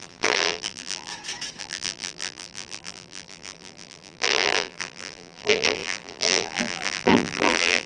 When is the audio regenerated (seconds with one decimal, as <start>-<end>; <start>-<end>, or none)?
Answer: 0.0-1.1; 1.6-7.9

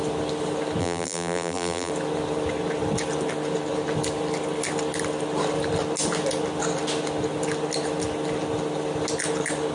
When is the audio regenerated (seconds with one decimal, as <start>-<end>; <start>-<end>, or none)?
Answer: 0.8-1.9

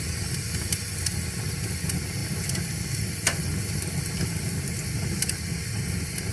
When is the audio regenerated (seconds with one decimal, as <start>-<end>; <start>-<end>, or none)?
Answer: none

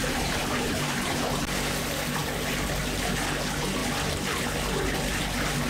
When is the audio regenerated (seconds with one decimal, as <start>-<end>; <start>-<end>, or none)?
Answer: 0.0-1.4